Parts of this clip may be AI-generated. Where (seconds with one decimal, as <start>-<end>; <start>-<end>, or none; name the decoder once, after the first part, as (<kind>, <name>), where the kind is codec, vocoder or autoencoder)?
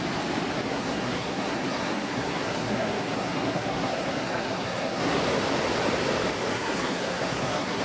0.5-5.2 (codec, SNAC); 6.5-7.8